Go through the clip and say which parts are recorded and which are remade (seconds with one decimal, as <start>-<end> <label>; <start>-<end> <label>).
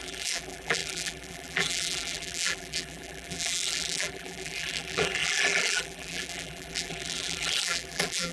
0.0-8.3 remade